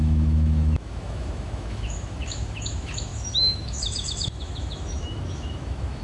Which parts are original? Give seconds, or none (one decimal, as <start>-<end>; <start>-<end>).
none